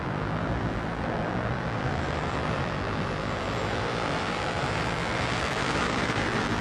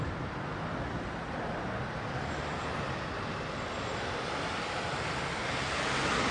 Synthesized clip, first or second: first